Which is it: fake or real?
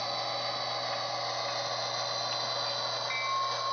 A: real